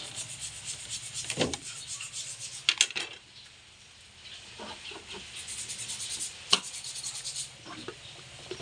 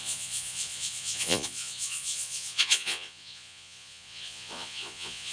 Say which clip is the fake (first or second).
second